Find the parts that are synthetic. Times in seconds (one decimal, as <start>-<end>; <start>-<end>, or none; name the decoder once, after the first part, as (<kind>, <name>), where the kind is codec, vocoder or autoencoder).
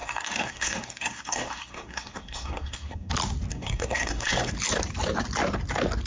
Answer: 0.0-3.1 (codec, SNAC); 3.5-4.5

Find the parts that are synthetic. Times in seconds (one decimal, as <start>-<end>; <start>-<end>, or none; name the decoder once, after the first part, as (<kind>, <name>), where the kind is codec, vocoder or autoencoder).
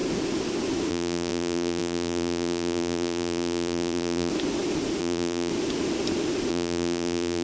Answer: 0.9-4.3 (vocoder, BigVGAN v2); 5.0-5.5; 6.5-7.4